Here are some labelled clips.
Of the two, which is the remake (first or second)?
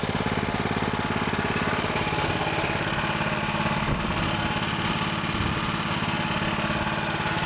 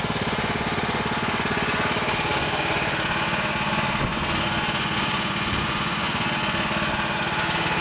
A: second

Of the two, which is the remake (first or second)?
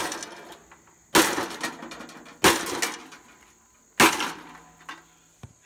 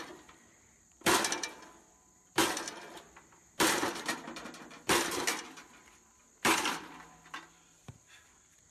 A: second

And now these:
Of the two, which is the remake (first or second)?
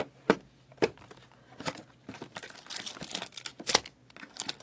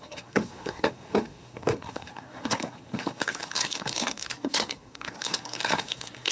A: second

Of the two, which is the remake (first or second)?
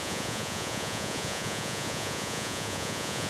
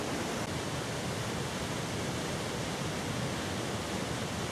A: first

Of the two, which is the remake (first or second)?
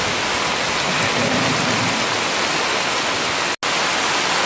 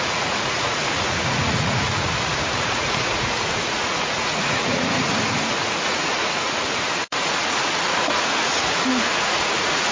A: second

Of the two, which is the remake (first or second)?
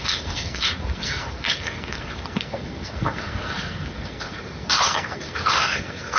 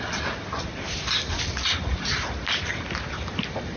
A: first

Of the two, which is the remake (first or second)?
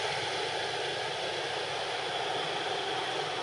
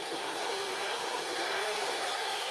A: second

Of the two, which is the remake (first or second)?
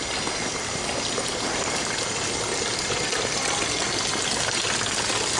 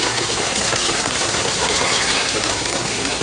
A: second